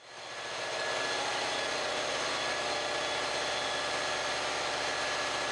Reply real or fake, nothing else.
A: real